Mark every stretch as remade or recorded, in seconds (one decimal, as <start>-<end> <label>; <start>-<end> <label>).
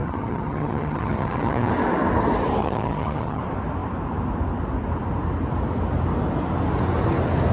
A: 0.0-1.7 remade; 1.7-2.6 recorded; 2.6-3.4 remade; 3.4-7.5 recorded